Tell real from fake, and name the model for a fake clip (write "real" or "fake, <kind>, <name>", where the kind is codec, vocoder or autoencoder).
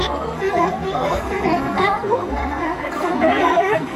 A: fake, codec, SNAC